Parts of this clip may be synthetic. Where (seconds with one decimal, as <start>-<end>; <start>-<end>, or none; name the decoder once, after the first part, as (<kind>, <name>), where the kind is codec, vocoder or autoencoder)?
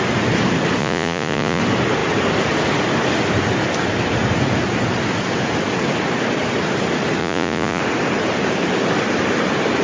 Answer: 0.8-1.6 (vocoder, Vocos); 7.2-7.8